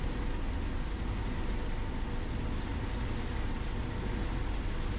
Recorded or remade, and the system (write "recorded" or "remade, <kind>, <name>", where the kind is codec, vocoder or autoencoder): recorded